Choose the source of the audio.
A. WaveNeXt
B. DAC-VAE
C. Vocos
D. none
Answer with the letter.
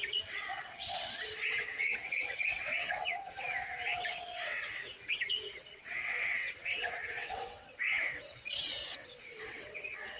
A